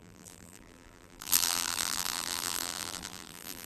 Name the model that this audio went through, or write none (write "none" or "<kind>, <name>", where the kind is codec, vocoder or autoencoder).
vocoder, BigVGAN v2